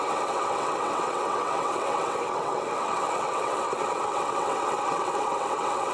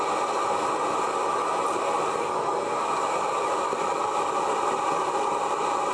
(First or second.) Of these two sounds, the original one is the second